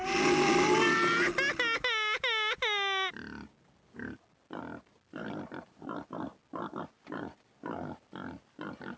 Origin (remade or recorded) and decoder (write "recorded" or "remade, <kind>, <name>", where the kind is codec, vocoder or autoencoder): recorded